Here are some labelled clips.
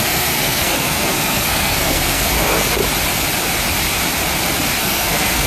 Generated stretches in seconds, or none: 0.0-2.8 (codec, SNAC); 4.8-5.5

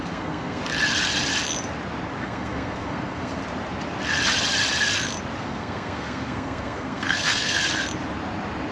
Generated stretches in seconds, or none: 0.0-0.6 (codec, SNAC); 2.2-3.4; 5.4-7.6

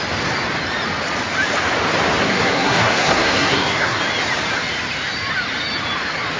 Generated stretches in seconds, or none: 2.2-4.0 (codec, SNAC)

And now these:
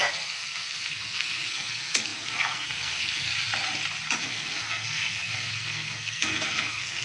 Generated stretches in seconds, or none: 0.0-3.3 (codec, SNAC); 4.2-7.0

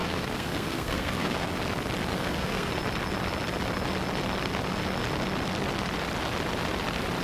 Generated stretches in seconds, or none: 0.0-1.6 (codec, SNAC); 2.1-2.7

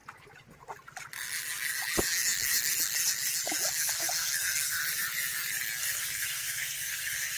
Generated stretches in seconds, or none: 3.7-4.8 (codec, SNAC); 5.8-7.4

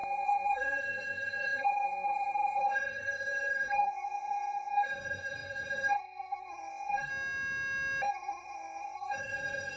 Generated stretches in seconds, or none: 0.0-7.1 (codec, SNAC); 8.1-9.8